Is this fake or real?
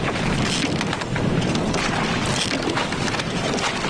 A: real